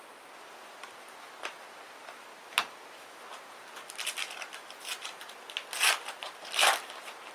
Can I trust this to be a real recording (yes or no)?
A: yes